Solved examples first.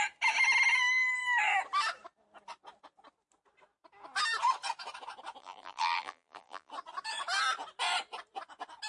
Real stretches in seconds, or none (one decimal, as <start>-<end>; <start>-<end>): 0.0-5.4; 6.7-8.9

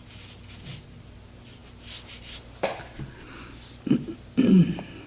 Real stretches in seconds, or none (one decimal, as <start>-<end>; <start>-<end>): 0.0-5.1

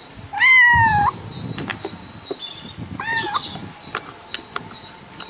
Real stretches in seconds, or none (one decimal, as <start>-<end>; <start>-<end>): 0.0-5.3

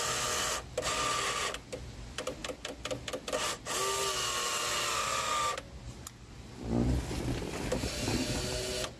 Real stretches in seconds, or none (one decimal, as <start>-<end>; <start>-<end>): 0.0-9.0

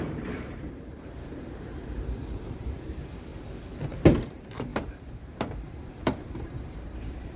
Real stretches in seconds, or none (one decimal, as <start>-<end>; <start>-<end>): 3.3-4.2

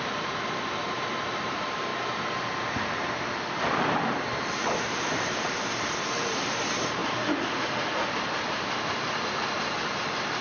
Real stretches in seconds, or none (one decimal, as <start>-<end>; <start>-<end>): 1.9-2.4

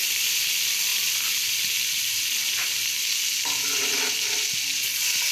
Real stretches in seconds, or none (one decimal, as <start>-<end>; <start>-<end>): 0.5-0.9; 4.1-5.3